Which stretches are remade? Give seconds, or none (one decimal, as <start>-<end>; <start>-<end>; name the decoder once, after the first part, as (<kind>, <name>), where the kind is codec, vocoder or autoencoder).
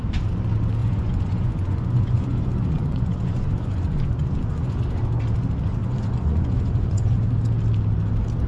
0.8-4.8 (vocoder, Vocos); 5.8-7.4